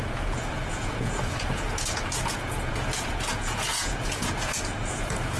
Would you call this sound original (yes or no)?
no